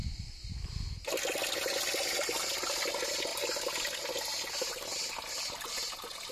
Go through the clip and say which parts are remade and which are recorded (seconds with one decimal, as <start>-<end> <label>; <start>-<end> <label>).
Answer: 0.0-6.3 recorded